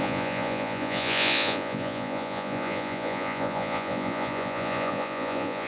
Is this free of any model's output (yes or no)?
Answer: no